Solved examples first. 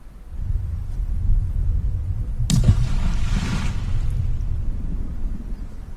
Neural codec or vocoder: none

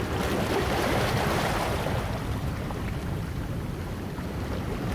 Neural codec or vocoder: none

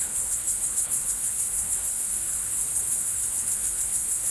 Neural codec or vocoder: codec, HILCodec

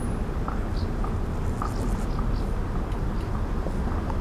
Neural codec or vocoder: none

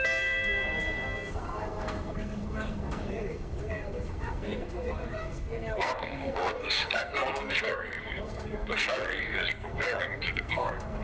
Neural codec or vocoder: codec, SNAC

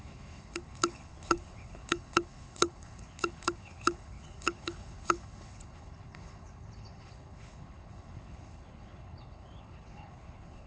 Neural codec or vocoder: codec, HILCodec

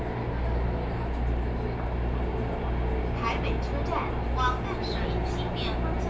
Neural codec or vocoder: none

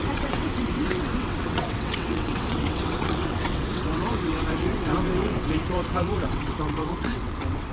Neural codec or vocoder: vocoder, WaveNeXt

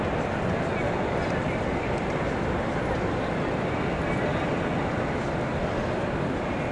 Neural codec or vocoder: none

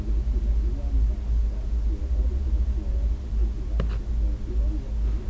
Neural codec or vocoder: none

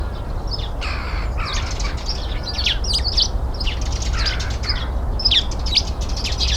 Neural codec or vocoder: none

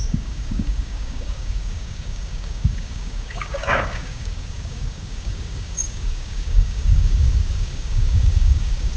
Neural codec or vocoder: codec, DAC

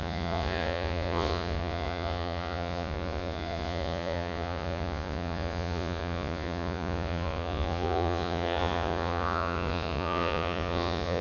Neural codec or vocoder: vocoder, Vocos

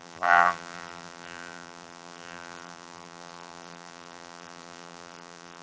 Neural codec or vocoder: vocoder, BigVGAN v2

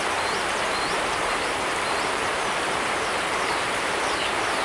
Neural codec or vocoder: vocoder, BigVGAN v2